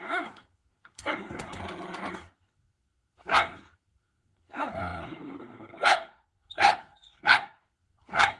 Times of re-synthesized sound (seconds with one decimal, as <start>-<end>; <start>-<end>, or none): 0.0-1.6; 2.1-8.4

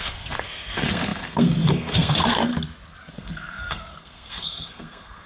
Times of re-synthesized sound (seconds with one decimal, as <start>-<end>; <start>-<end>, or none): 0.0-2.5; 3.1-5.3